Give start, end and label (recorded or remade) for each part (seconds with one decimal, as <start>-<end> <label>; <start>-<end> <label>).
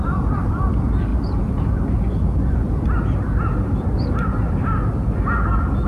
0.0-0.7 remade; 0.7-1.1 recorded; 1.1-4.6 remade; 4.6-5.9 recorded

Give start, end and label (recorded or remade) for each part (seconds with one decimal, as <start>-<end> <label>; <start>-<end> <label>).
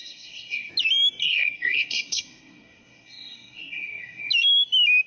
0.0-0.7 remade; 0.7-1.2 recorded; 1.2-4.3 remade; 4.3-5.1 recorded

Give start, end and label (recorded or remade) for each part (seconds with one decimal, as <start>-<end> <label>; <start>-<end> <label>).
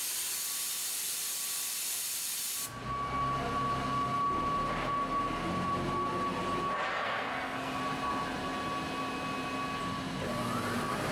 0.0-6.9 recorded; 6.9-7.8 remade; 7.8-11.1 recorded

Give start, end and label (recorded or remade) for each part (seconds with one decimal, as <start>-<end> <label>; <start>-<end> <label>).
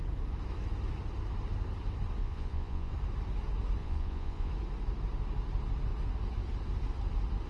0.0-2.2 recorded; 2.2-2.9 remade; 2.9-3.8 recorded; 3.8-4.5 remade; 4.5-7.5 recorded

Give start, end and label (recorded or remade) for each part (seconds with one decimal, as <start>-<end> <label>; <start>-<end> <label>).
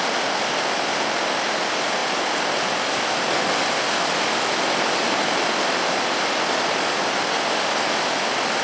0.0-8.6 recorded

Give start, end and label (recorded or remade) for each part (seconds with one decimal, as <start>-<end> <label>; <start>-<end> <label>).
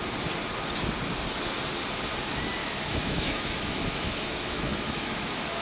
0.0-2.6 recorded; 2.6-5.6 remade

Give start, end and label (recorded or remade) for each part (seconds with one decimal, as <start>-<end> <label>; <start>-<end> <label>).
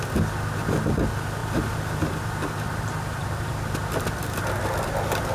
0.0-1.4 recorded; 1.4-3.5 remade; 3.5-5.3 recorded